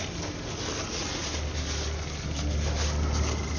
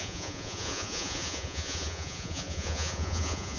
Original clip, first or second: first